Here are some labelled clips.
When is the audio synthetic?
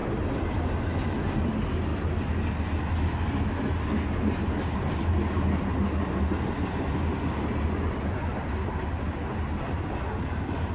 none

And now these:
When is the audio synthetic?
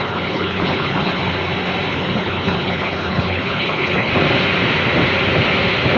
0.0-1.2 (codec, HILCodec); 1.9-4.1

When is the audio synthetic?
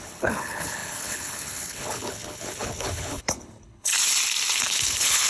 0.0-3.9 (codec, HILCodec); 4.5-5.3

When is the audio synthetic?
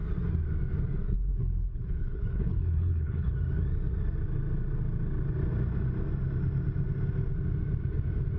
1.3-3.3 (codec, HILCodec)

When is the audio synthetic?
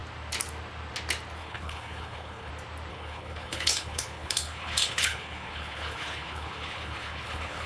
1.4-2.5 (codec, HILCodec); 2.9-7.7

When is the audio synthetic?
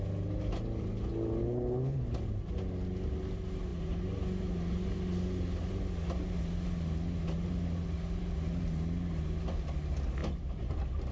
1.4-2.0 (codec, HILCodec)